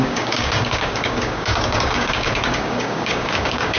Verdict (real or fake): fake